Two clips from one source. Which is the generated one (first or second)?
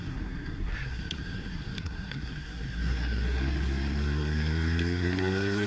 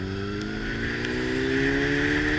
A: first